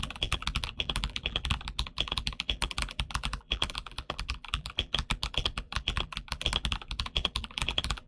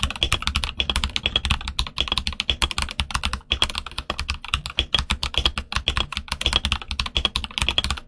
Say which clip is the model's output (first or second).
first